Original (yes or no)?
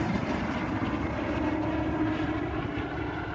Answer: yes